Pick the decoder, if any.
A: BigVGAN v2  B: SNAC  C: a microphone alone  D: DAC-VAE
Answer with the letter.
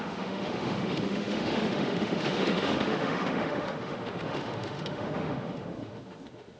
D